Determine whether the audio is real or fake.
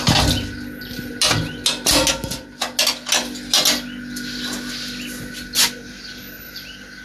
real